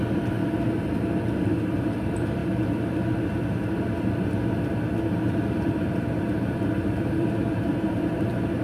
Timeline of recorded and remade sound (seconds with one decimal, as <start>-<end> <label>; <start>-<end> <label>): 0.0-0.4 remade; 0.4-1.4 recorded; 1.4-2.4 remade; 2.4-5.1 recorded; 5.1-8.6 remade